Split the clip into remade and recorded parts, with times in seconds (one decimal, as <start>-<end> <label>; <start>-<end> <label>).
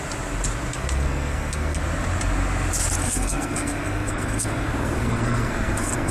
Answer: 0.0-0.7 recorded; 0.7-1.8 remade; 1.8-3.0 recorded; 3.0-6.1 remade